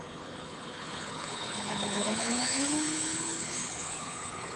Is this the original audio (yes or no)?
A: no